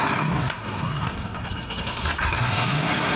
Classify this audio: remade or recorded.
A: remade